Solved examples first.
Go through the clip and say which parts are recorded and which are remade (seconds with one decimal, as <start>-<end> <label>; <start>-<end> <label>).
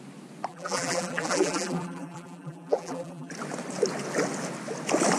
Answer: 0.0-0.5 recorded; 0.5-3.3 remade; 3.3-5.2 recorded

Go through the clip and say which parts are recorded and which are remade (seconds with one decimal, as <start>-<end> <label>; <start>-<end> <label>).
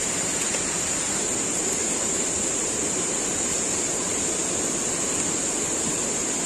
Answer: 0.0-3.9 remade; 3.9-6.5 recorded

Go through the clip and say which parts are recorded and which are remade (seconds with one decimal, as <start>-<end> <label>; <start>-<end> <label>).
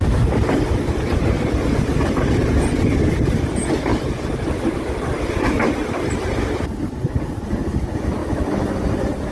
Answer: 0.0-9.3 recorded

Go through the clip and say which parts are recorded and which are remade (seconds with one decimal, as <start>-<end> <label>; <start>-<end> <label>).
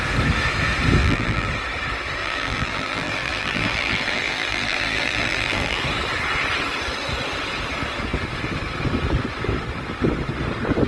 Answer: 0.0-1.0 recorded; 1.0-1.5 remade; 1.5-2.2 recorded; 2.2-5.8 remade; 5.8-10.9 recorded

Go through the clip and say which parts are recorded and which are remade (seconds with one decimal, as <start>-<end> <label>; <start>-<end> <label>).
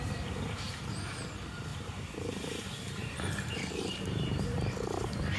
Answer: 0.0-1.7 recorded; 1.7-4.7 remade; 4.7-5.4 recorded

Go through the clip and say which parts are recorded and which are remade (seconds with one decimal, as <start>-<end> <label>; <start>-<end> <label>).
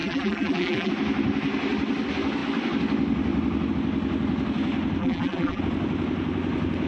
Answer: 0.0-0.9 remade; 0.9-5.0 recorded; 5.0-5.6 remade; 5.6-6.9 recorded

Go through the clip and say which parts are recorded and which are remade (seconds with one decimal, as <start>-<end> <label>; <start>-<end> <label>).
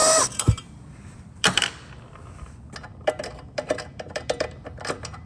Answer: 0.0-2.0 remade; 2.0-2.9 recorded; 2.9-5.3 remade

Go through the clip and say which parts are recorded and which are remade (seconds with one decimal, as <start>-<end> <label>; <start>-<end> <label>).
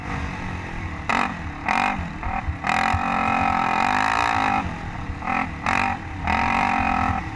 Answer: 0.0-7.4 remade